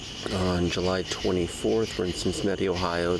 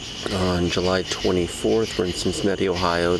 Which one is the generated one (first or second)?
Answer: first